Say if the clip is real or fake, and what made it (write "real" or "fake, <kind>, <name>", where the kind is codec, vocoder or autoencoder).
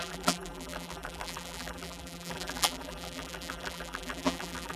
fake, vocoder, BigVGAN v2